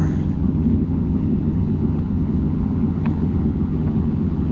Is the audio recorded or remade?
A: remade